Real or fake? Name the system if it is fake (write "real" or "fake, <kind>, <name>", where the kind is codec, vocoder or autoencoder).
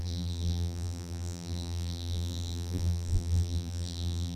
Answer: fake, vocoder, BigVGAN v2